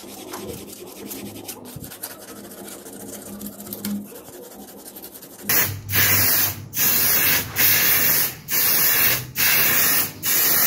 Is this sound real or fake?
real